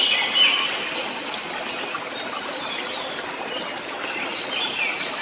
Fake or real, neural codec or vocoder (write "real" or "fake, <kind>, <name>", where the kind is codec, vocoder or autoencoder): real